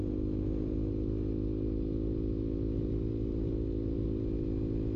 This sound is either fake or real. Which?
real